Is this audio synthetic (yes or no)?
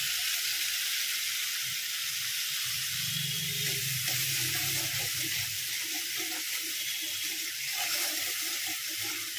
yes